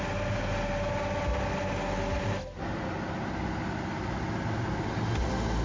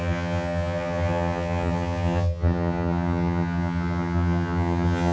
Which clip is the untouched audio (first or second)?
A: first